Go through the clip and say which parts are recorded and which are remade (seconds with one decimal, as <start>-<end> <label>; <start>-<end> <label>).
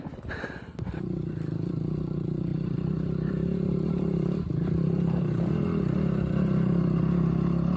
0.0-2.5 recorded; 2.5-5.5 remade; 5.5-7.8 recorded